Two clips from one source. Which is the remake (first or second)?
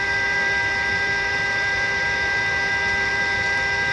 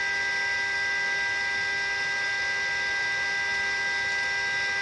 first